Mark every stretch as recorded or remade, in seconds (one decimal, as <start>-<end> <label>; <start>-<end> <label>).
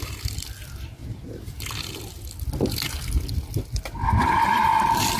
0.0-1.0 remade; 1.0-3.5 recorded; 3.5-4.7 remade; 4.7-5.2 recorded